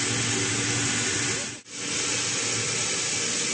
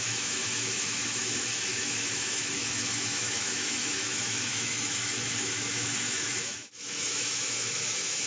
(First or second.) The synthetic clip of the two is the second